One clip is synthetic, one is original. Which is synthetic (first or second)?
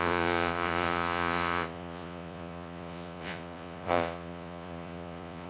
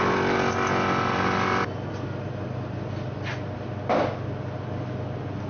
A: first